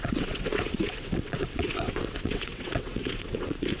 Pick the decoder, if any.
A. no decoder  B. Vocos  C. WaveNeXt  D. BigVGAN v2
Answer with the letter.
C